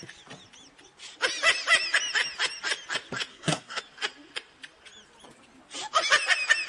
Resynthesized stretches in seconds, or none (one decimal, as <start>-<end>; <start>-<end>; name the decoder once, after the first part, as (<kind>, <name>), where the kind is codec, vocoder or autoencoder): 3.3-3.8 (codec, SNAC)